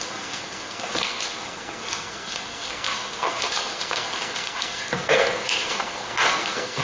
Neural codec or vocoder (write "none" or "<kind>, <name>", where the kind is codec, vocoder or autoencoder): codec, SNAC